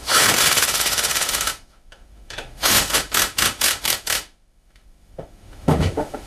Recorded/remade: remade